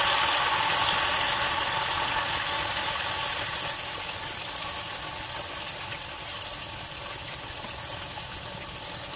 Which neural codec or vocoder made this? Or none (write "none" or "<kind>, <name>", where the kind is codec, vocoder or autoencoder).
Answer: none